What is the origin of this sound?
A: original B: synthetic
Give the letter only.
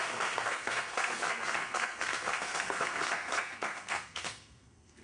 B